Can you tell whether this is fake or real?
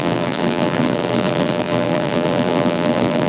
fake